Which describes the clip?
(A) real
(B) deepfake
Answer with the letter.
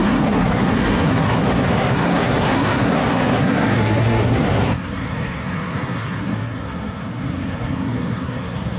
B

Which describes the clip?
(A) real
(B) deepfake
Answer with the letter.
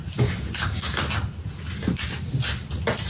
A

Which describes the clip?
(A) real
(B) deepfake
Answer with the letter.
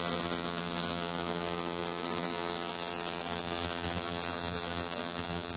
B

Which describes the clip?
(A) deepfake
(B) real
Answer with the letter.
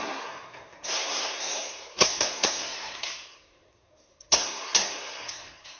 A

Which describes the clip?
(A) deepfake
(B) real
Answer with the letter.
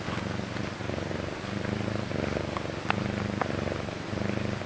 B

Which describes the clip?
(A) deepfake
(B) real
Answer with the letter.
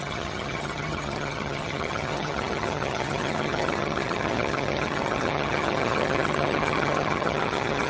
A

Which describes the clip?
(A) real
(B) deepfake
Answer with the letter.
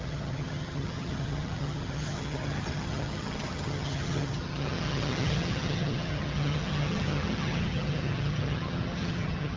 B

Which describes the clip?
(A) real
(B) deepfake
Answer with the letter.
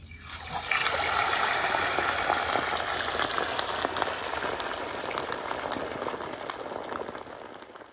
A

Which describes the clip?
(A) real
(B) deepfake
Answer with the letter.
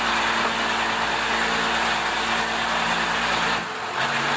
A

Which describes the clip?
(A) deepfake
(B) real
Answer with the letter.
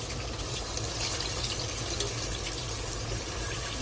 B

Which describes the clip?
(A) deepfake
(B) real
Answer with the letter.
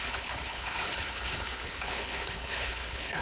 A